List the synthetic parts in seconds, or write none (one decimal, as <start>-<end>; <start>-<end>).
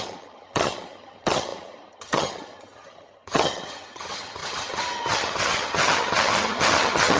0.0-7.2